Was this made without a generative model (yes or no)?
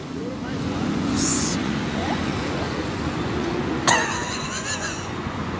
no